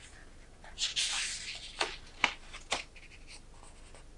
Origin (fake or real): real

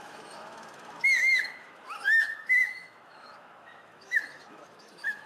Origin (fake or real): fake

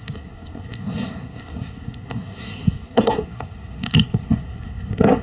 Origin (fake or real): fake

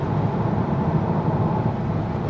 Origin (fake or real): real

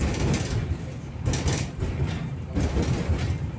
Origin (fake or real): real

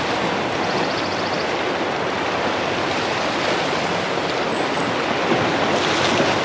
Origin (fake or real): real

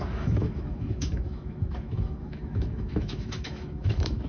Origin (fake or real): fake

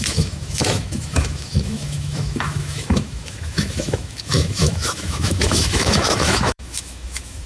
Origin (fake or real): fake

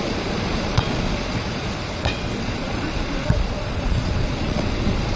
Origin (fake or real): fake